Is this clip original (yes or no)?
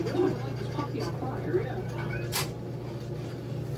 yes